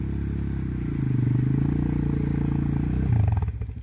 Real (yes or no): yes